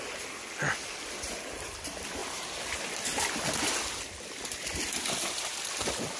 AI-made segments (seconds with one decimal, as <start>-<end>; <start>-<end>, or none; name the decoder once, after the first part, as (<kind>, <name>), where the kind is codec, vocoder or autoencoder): none